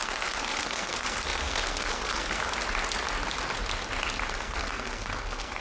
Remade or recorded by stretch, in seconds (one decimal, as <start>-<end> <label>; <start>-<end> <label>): 0.0-2.4 remade; 2.4-4.3 recorded; 4.3-5.6 remade

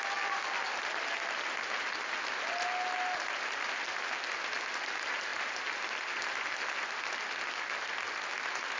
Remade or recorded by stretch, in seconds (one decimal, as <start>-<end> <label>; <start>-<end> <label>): 0.0-8.8 recorded

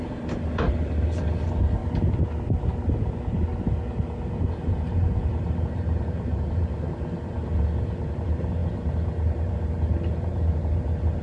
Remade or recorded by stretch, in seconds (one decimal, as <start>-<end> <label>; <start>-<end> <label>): 0.0-1.8 remade; 1.8-4.5 recorded; 4.5-11.2 remade

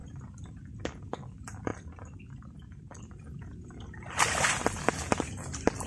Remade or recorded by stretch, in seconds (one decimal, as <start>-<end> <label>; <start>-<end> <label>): 0.0-1.0 recorded; 1.0-1.7 remade; 1.7-3.0 recorded; 3.0-5.9 remade

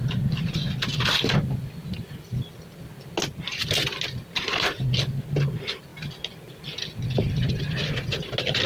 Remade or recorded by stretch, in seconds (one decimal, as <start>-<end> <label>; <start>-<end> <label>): 0.0-8.7 recorded

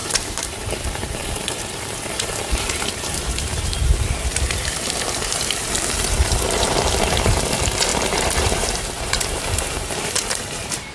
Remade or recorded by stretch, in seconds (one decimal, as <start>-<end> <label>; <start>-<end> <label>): 0.0-10.9 remade